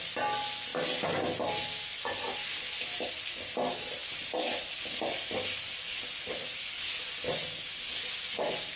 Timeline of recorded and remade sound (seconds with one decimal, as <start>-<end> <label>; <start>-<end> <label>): 0.0-8.8 recorded